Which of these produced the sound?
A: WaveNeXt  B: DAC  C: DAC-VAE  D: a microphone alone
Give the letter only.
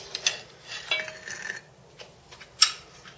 D